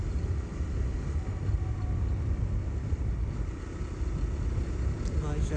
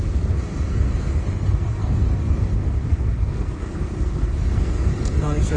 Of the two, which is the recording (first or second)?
first